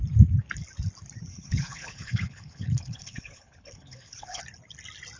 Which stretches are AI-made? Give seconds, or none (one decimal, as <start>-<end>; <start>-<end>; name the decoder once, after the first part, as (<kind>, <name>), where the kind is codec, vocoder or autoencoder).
1.3-4.4 (codec, HILCodec)